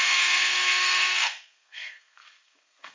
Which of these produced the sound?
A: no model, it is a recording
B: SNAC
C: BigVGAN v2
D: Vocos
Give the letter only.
B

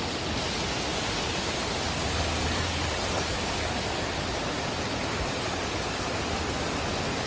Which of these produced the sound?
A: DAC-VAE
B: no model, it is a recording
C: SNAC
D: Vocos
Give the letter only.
B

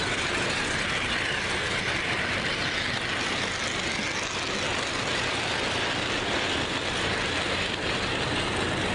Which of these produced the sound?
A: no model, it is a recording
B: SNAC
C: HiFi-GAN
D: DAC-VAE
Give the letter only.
A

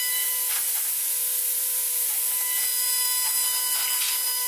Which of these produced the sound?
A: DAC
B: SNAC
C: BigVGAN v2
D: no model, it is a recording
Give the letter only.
D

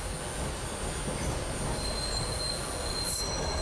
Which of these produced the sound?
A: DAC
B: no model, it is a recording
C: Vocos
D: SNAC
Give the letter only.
B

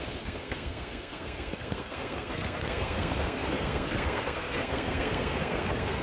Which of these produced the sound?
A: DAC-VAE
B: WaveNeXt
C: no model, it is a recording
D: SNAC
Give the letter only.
D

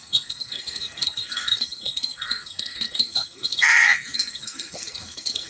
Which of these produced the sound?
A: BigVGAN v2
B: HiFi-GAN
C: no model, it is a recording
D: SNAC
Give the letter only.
D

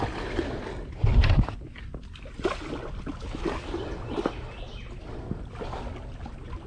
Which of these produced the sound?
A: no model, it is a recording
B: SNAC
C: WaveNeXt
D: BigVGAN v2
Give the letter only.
A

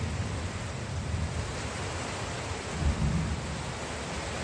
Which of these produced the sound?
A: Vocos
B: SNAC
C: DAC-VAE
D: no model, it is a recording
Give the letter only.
D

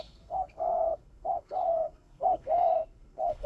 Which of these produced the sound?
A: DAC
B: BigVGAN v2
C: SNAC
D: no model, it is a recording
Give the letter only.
C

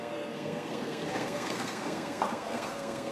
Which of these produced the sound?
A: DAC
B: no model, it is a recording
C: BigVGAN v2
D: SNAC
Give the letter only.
D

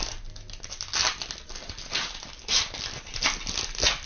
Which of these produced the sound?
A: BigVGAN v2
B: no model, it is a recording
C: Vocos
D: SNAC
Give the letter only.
B